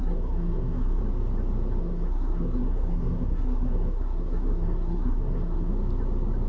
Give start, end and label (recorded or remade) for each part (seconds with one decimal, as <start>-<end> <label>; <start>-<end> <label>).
0.0-1.0 remade; 1.0-1.8 recorded; 1.8-5.7 remade; 5.7-6.5 recorded